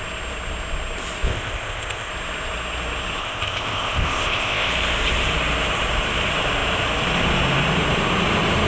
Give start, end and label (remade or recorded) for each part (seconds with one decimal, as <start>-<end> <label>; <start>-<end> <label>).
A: 0.0-1.3 recorded; 1.3-2.1 remade; 2.1-3.2 recorded; 3.2-4.7 remade; 4.7-8.7 recorded